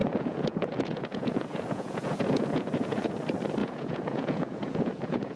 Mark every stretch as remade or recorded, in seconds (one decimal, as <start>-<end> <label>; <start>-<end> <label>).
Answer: 0.0-3.2 remade; 3.2-3.6 recorded; 3.6-5.4 remade